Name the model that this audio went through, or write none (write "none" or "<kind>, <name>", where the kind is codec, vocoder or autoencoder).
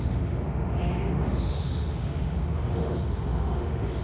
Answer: autoencoder, DAC-VAE